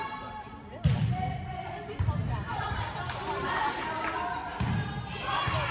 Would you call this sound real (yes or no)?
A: no